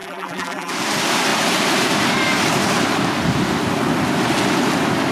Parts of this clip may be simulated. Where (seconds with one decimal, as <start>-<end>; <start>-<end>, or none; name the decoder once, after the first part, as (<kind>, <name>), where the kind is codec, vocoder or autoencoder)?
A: 0.0-0.7 (vocoder, BigVGAN v2)